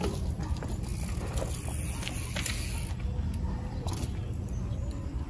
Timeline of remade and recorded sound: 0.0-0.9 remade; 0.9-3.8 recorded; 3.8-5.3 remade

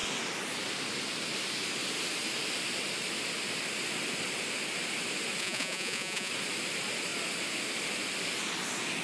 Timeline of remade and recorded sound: 0.0-5.4 recorded; 5.4-6.3 remade; 6.3-9.0 recorded

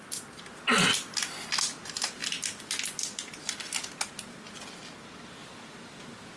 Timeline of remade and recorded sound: 0.0-6.4 recorded

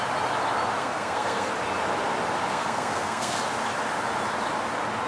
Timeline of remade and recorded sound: 0.0-0.8 recorded; 0.8-1.5 remade; 1.5-2.5 recorded; 2.5-3.4 remade; 3.4-5.1 recorded

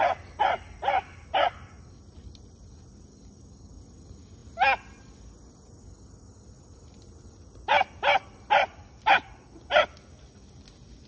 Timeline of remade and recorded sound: 0.0-11.1 recorded

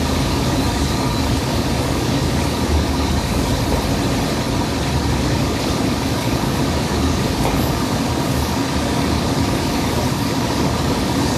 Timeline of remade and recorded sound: 0.0-3.5 remade; 3.5-5.1 recorded; 5.1-11.4 remade

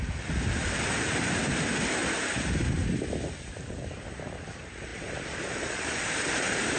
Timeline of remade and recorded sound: 0.0-2.0 remade; 2.0-3.1 recorded; 3.1-6.8 remade

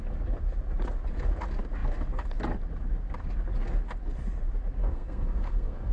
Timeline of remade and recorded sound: 0.0-4.8 recorded; 4.8-5.9 remade